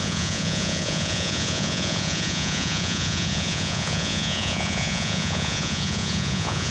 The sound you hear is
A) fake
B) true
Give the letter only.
A